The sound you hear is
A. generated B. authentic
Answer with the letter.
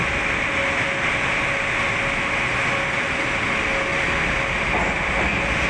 B